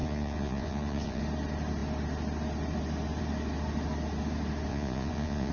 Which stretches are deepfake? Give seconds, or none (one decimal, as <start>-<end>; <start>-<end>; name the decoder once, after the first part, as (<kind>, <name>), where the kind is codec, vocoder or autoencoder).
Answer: 0.0-1.2 (vocoder, Vocos); 4.7-5.5